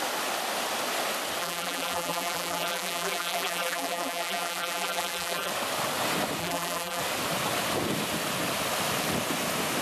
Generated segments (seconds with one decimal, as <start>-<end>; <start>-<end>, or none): 1.4-5.5; 6.4-7.0